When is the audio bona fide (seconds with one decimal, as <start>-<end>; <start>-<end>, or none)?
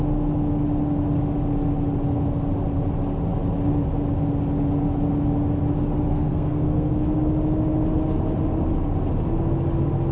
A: 0.0-6.1; 6.9-10.1